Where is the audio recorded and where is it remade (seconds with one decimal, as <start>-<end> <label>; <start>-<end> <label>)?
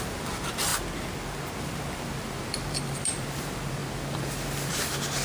0.0-0.7 remade; 0.7-1.6 recorded; 1.6-3.8 remade; 3.8-5.2 recorded